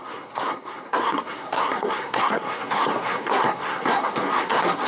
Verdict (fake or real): fake